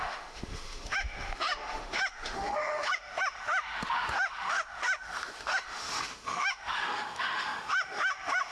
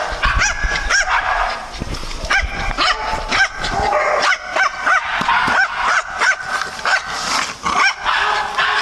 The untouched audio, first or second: second